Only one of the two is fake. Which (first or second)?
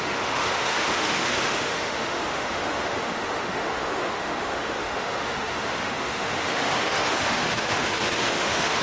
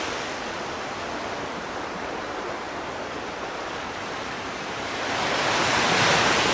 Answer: first